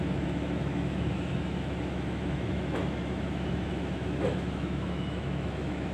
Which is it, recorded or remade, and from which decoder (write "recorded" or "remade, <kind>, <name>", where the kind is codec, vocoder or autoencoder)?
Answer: remade, autoencoder, DAC-VAE